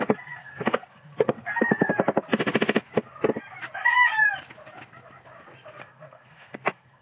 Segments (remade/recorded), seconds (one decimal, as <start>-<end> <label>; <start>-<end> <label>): 0.0-0.4 recorded; 0.4-1.9 remade; 1.9-5.8 recorded; 5.8-7.0 remade